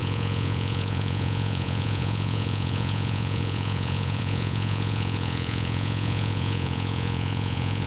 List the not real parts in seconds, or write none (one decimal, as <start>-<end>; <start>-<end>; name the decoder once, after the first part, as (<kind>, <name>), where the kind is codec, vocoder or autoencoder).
0.0-7.9 (vocoder, Vocos)